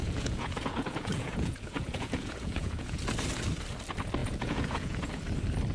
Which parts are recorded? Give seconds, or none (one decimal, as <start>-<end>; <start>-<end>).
3.0-4.2; 5.2-5.7